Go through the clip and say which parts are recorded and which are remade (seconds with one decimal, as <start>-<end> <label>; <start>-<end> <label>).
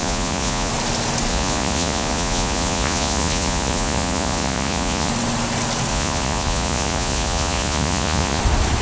0.0-0.7 remade; 0.7-1.3 recorded; 1.3-5.1 remade; 5.1-5.9 recorded; 5.9-8.4 remade; 8.4-8.8 recorded